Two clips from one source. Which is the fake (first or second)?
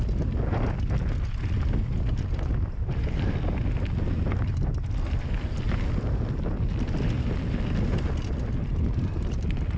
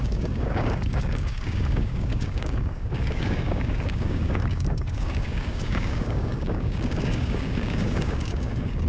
second